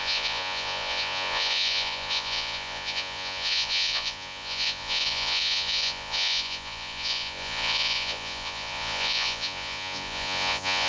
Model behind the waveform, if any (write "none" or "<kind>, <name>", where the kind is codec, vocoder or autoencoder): vocoder, Vocos